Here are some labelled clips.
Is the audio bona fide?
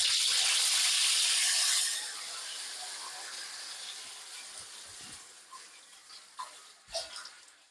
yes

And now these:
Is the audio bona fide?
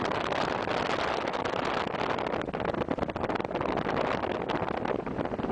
yes